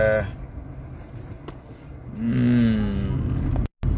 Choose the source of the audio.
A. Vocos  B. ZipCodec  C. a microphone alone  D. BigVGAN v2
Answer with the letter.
C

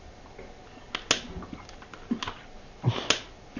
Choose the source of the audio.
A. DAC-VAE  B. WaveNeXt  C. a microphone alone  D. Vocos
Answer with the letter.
C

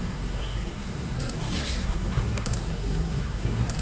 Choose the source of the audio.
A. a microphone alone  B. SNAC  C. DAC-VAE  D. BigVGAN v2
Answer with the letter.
B